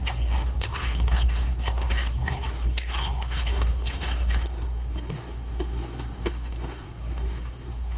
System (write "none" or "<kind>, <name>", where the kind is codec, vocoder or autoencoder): codec, SNAC